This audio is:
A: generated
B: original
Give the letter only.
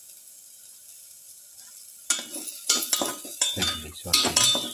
B